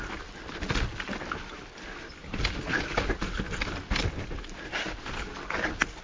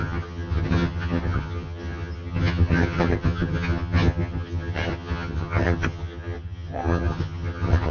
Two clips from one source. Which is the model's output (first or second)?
second